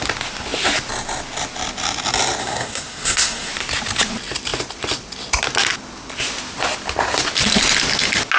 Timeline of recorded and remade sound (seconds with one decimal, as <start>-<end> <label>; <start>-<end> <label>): 0.0-2.4 recorded; 2.4-3.5 remade; 3.5-8.4 recorded